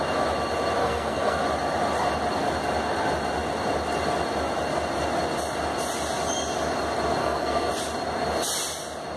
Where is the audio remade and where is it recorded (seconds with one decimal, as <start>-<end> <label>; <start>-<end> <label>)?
0.0-0.8 recorded; 0.8-1.4 remade; 1.4-7.2 recorded; 7.2-7.7 remade; 7.7-9.2 recorded